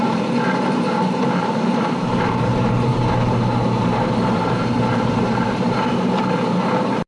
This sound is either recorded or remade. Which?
remade